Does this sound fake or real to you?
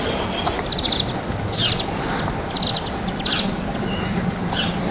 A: real